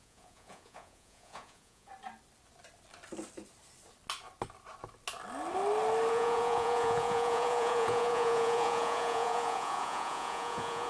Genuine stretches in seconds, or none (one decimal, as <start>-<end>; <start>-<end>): 1.9-6.1